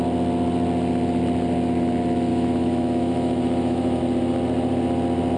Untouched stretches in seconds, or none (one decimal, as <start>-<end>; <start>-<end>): 0.0-2.3; 4.0-5.4